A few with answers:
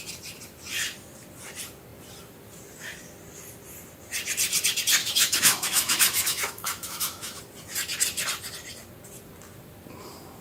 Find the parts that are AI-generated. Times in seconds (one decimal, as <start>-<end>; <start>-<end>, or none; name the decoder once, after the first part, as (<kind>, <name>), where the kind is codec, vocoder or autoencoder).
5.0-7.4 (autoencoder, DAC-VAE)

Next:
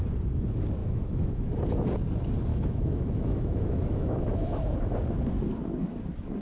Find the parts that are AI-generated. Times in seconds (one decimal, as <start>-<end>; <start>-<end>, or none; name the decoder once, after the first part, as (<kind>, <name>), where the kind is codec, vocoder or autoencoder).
0.8-1.6 (autoencoder, DAC-VAE); 2.5-4.7

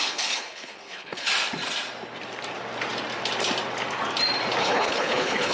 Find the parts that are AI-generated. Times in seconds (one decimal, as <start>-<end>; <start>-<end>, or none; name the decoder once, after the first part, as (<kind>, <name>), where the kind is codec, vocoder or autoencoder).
0.0-1.3 (codec, HILCodec); 4.6-5.5